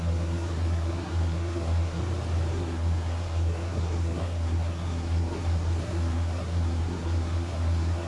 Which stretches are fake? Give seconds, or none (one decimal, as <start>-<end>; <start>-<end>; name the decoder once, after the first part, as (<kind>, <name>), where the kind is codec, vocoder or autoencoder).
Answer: 0.0-2.0 (codec, SNAC); 2.5-8.1